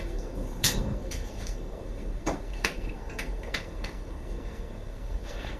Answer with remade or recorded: remade